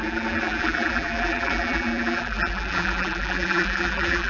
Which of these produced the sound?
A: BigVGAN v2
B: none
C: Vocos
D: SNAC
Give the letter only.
A